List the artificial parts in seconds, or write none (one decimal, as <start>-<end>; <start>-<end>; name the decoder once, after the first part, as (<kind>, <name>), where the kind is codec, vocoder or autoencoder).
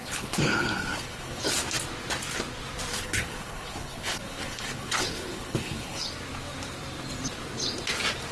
0.0-1.5 (codec, HILCodec); 2.9-6.1